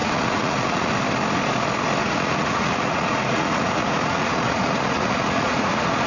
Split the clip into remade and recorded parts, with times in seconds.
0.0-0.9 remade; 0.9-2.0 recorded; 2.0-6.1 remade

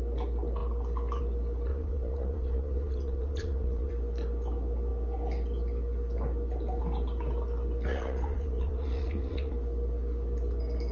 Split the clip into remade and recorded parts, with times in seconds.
0.0-1.7 recorded; 1.7-3.9 remade; 3.9-7.9 recorded; 7.9-9.5 remade; 9.5-10.9 recorded

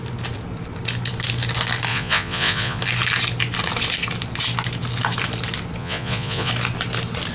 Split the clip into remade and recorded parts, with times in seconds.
0.0-1.9 recorded; 1.9-2.8 remade; 2.8-5.8 recorded; 5.8-6.5 remade; 6.5-7.3 recorded

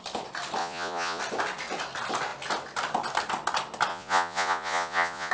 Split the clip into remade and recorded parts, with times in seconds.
0.0-0.6 recorded; 0.6-1.2 remade; 1.2-3.9 recorded; 3.9-5.3 remade